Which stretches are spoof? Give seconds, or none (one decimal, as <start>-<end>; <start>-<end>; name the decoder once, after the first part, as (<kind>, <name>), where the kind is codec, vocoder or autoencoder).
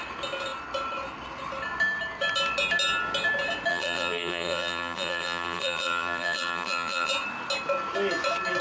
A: 3.7-7.1 (vocoder, BigVGAN v2)